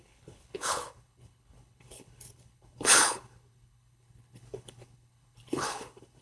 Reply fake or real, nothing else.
fake